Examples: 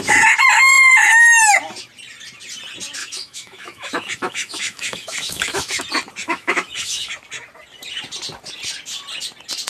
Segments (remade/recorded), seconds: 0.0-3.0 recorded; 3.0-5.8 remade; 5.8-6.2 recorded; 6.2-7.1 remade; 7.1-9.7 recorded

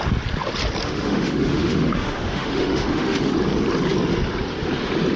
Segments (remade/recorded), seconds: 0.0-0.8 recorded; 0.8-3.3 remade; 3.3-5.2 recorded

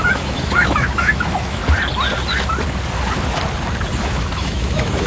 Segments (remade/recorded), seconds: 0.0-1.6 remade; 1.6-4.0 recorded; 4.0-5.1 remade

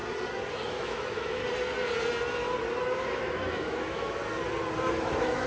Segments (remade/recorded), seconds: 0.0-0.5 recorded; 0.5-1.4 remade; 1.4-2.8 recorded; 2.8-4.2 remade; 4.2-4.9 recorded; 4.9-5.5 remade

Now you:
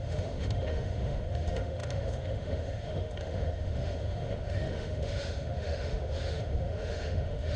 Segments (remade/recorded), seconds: 0.0-7.6 remade

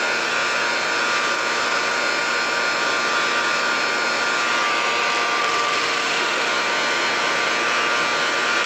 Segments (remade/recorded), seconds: 0.0-5.4 recorded; 5.4-6.5 remade; 6.5-8.7 recorded